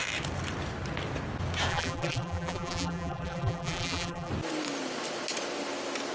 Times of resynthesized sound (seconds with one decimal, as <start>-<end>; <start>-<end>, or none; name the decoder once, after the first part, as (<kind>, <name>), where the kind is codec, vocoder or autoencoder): 1.7-4.3 (vocoder, BigVGAN v2)